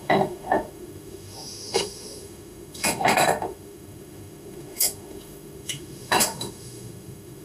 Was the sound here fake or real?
fake